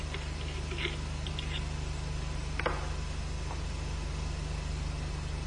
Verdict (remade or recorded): recorded